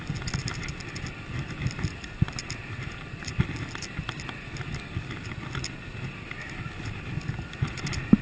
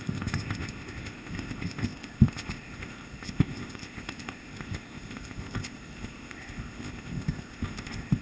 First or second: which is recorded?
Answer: first